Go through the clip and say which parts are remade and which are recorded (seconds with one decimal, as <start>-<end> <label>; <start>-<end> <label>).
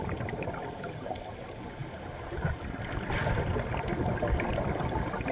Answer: 0.0-5.3 recorded